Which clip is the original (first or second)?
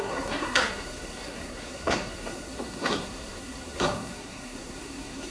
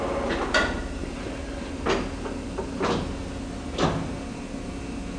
second